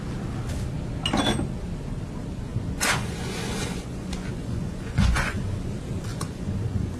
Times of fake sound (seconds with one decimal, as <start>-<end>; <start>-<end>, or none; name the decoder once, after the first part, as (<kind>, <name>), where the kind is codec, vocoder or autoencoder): 2.5-5.4 (vocoder, Vocos); 6.1-7.0